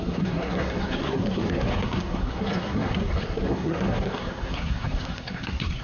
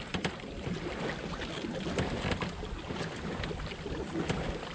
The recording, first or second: second